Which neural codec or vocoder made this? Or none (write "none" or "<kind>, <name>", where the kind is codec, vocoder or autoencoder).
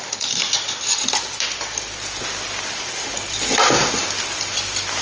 none